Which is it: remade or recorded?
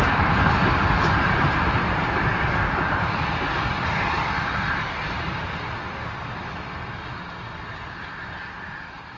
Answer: recorded